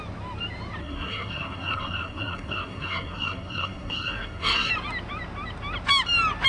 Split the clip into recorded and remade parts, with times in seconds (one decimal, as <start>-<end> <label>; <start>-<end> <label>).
0.0-0.8 recorded; 0.8-4.7 remade; 4.7-6.5 recorded